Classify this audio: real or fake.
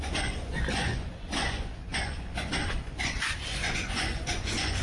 fake